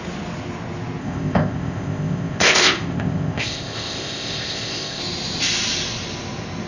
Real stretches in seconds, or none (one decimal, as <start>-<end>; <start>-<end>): 0.0-1.0; 5.0-6.7